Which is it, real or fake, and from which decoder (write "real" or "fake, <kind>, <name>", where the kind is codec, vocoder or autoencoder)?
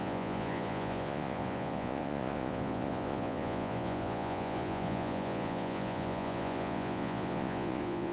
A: fake, vocoder, Vocos